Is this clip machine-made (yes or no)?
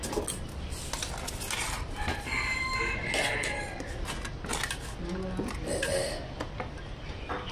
no